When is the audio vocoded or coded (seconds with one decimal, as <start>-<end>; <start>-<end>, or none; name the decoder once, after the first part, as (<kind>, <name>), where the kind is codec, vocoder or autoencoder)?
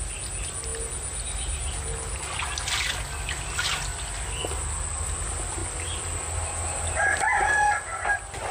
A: none